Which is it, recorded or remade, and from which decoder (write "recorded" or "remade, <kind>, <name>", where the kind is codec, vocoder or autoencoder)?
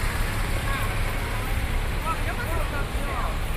recorded